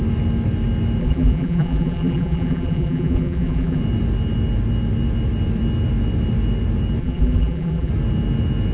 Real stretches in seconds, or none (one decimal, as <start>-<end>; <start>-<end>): 0.0-1.0; 3.8-7.0; 7.9-8.7